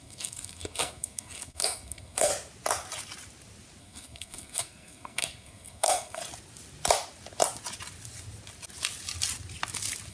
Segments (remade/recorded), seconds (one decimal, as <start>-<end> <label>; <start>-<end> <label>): 0.0-2.3 remade; 2.3-3.8 recorded; 3.8-6.2 remade; 6.2-10.1 recorded